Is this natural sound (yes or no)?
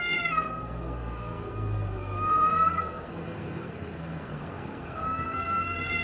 no